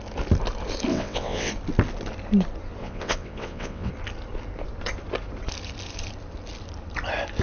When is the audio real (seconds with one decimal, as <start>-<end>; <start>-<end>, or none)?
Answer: 0.0-0.9; 1.5-2.8; 3.9-7.4

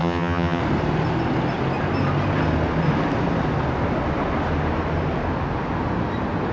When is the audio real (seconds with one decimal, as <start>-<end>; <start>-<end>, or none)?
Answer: 0.6-6.5

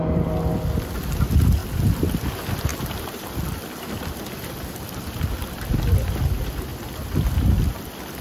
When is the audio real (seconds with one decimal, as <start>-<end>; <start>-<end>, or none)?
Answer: 0.0-8.2